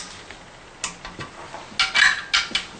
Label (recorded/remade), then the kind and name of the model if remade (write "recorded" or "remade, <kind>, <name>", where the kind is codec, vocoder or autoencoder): recorded